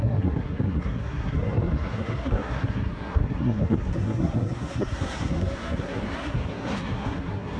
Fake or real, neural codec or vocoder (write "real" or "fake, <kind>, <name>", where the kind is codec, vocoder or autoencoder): fake, codec, SNAC